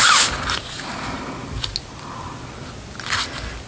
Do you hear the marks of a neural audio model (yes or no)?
no